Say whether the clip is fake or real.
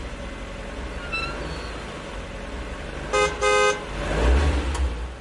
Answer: real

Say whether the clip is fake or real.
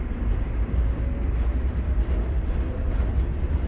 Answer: real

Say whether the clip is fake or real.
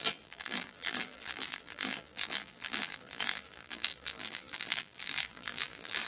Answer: fake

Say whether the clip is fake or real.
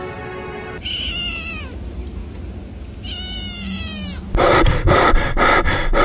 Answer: real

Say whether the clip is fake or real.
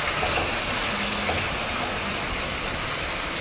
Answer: real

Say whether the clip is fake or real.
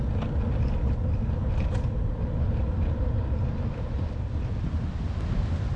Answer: real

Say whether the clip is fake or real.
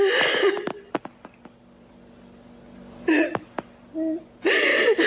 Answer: real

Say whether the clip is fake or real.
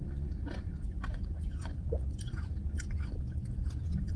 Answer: fake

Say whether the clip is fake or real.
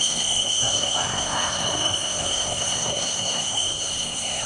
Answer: fake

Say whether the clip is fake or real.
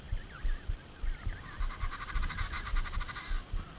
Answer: real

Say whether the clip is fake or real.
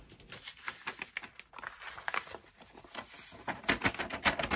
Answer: real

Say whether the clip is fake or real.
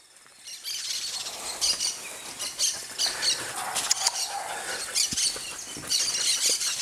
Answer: real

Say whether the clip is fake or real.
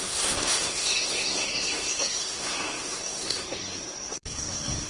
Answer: fake